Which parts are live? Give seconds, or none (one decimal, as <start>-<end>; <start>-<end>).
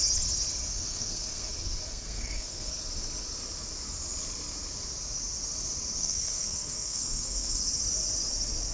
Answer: 0.0-0.7; 1.5-1.9; 2.7-6.0; 7.6-8.7